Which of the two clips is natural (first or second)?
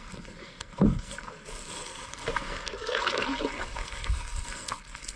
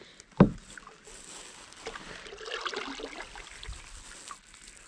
second